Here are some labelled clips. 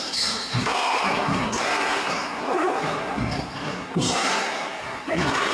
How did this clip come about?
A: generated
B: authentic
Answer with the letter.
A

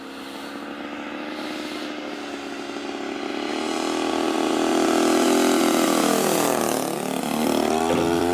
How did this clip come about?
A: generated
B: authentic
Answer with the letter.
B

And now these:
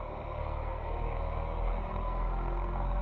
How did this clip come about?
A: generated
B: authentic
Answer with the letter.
A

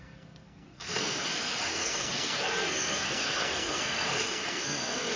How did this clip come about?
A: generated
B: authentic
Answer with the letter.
A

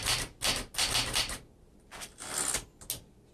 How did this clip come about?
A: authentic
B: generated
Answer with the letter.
A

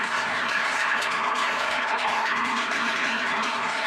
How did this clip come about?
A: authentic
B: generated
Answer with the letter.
B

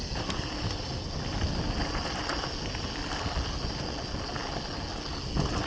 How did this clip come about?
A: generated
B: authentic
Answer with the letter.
B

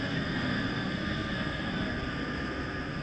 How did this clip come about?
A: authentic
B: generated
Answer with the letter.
B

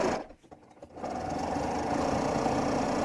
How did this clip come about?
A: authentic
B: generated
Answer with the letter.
A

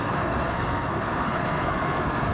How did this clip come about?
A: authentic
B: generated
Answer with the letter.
B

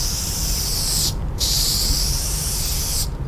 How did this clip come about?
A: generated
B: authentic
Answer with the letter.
B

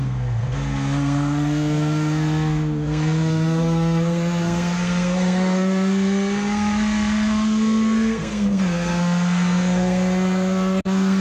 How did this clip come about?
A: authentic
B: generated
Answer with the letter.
B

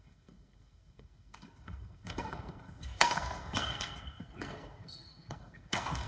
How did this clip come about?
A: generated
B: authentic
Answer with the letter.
A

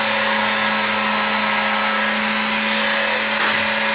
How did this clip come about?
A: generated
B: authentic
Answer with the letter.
B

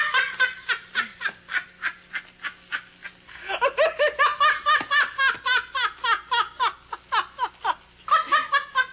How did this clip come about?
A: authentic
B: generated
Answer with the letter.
A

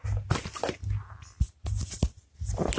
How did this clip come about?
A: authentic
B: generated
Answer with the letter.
A